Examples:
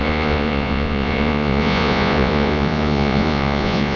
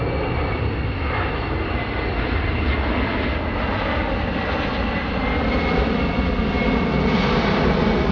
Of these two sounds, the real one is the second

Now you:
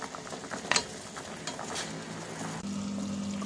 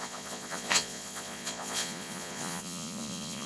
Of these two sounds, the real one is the first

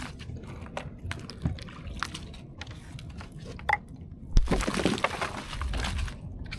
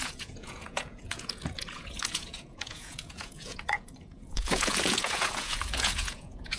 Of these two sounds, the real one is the first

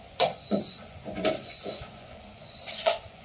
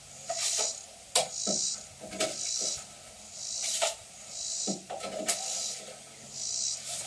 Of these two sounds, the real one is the second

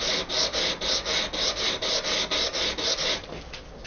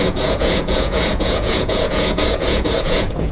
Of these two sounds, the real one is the first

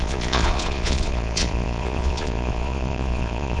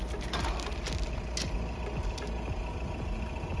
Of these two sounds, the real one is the second